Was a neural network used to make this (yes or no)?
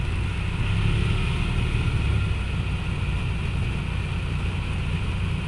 no